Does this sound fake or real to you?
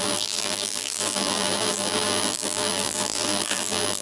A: fake